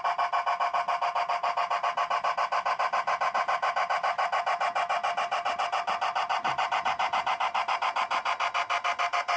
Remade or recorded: recorded